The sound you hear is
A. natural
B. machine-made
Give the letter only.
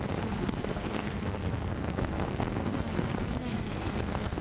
B